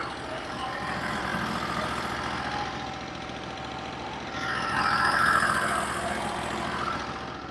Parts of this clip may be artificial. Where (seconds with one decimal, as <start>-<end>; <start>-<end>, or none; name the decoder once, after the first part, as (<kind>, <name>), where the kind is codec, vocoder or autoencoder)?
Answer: none